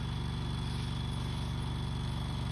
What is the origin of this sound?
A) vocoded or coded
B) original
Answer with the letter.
B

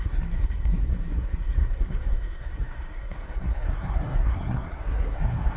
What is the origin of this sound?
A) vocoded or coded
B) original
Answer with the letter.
A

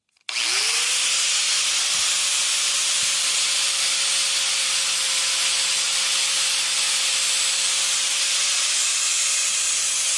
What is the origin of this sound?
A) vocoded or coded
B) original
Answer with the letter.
B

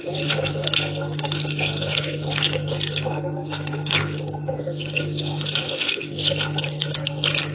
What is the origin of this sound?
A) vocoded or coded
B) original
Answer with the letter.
A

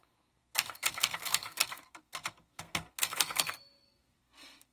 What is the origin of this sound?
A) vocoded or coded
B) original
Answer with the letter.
A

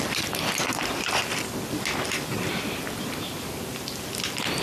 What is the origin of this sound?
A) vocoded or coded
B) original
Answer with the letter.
B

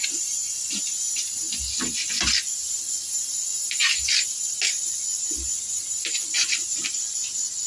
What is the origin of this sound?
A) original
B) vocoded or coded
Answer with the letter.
A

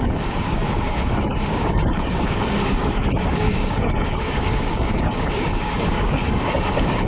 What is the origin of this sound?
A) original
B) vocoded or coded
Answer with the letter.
B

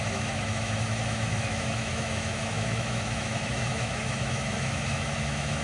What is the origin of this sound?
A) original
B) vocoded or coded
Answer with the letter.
B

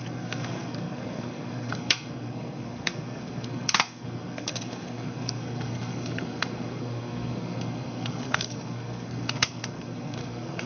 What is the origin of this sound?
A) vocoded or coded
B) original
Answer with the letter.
A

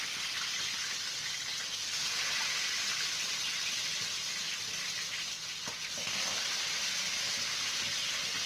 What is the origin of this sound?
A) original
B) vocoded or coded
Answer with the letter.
A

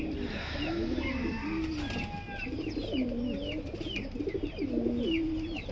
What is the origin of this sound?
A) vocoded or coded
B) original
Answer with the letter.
B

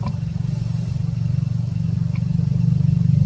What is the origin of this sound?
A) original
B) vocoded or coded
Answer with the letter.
A